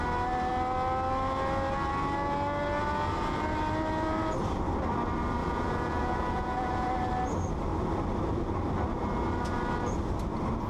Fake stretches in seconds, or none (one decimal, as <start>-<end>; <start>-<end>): 5.4-6.9

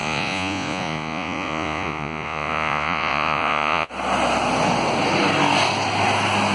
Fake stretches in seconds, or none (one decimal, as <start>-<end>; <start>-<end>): 0.0-3.9

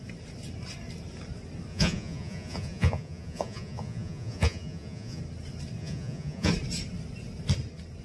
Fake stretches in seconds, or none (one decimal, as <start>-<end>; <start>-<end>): 1.7-5.2; 5.8-6.5